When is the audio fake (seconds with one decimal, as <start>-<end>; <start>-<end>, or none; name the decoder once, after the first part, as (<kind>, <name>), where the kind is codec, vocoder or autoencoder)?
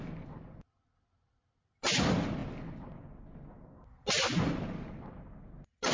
none